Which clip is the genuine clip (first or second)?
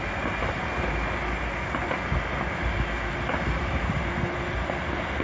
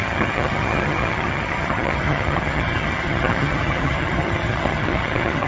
first